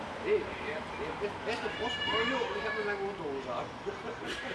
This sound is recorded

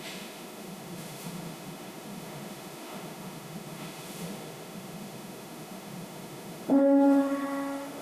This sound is remade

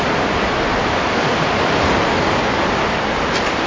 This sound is recorded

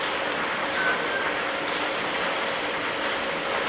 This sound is recorded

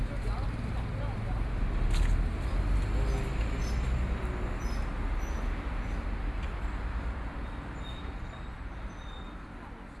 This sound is recorded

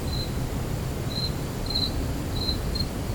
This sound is remade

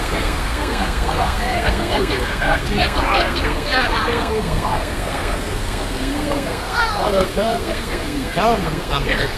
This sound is remade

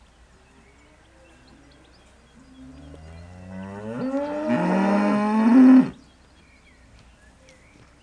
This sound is recorded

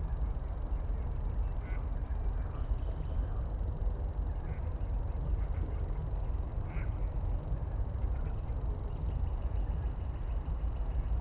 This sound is recorded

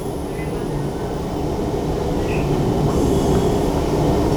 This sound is recorded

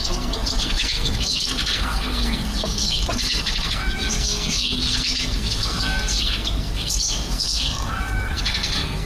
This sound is remade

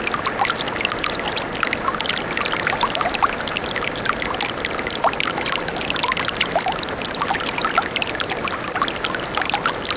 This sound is recorded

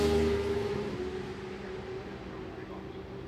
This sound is recorded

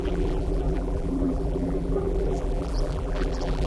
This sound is remade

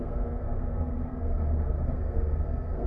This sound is remade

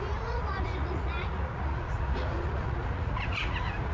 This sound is remade